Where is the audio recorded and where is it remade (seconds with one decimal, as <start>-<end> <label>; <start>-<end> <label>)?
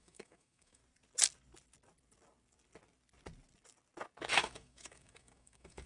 0.0-0.8 remade; 0.8-4.3 recorded; 4.3-5.9 remade